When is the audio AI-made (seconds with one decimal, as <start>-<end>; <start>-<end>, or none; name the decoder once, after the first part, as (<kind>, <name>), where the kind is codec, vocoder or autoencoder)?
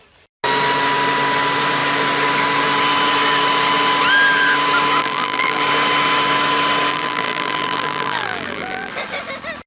5.0-5.6 (vocoder, BigVGAN v2); 6.9-8.9